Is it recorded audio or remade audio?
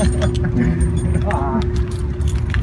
recorded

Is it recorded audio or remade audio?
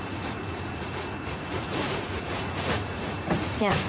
remade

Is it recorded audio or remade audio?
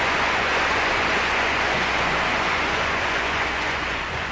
remade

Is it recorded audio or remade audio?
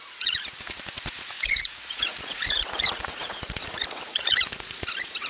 remade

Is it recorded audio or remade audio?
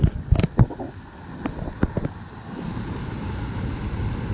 recorded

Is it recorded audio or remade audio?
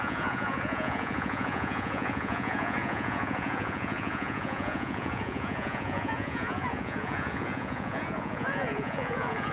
remade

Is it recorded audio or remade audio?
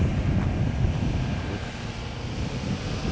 recorded